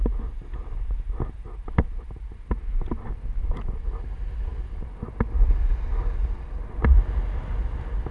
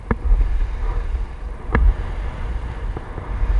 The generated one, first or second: second